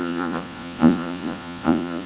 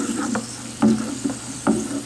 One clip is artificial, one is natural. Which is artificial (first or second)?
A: first